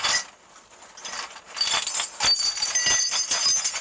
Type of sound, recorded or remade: recorded